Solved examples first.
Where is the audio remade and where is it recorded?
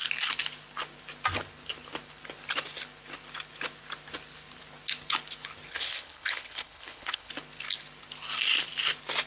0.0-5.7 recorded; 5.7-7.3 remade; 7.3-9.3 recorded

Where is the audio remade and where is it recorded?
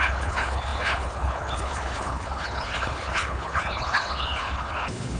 0.0-5.2 remade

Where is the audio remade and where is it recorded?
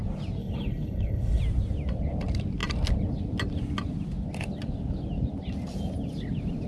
0.0-0.4 recorded; 0.4-1.4 remade; 1.4-6.7 recorded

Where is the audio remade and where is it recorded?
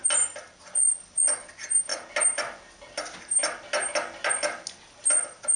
0.0-5.6 recorded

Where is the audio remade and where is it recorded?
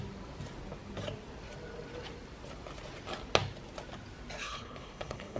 0.0-4.4 recorded; 4.4-5.4 remade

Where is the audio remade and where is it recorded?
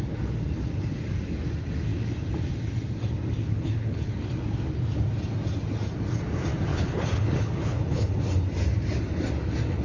0.0-3.4 recorded; 3.4-4.1 remade; 4.1-6.7 recorded; 6.7-8.2 remade; 8.2-9.8 recorded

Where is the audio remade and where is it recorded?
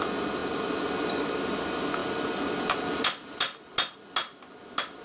0.0-5.0 recorded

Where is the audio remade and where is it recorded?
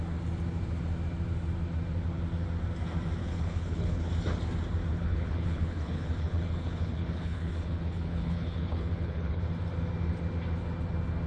0.0-3.2 recorded; 3.2-4.1 remade; 4.1-4.9 recorded; 4.9-9.4 remade; 9.4-11.3 recorded